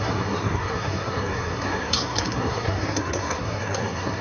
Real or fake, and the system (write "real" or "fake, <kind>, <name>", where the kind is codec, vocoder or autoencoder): fake, codec, SNAC